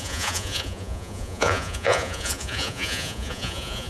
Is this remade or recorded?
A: remade